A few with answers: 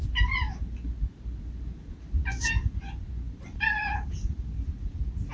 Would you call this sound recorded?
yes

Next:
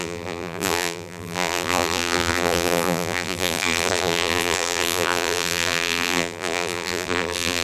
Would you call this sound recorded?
no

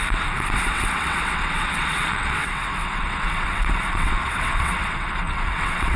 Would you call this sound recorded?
no